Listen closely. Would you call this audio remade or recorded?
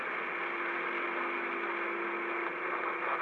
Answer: recorded